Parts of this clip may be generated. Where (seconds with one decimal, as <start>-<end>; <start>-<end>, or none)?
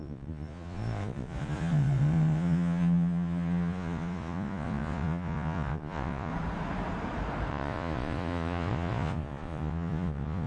0.0-6.3; 7.5-10.5